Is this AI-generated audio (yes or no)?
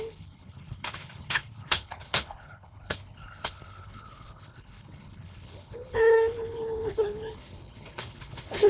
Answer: yes